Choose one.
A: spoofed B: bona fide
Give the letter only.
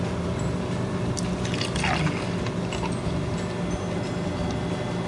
B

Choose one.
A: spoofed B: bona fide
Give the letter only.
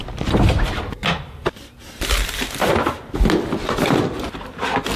B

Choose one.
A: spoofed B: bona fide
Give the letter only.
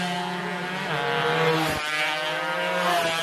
B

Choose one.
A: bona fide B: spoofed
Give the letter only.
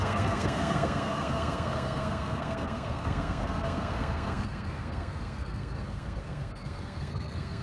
B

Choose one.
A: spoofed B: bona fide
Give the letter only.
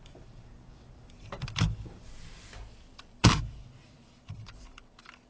A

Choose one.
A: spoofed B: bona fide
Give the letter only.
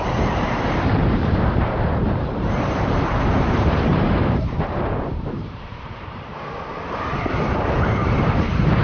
A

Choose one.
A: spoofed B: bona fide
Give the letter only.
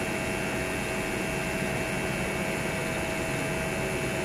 B